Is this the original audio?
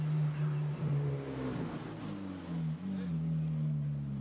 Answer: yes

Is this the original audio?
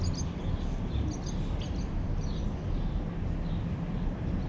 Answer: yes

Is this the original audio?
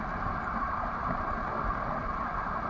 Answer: yes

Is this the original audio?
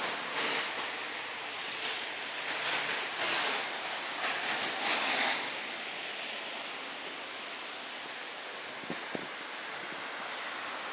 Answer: yes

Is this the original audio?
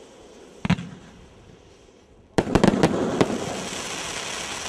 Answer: yes